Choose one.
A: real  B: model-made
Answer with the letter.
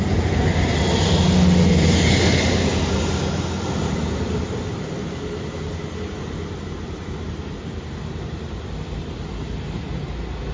A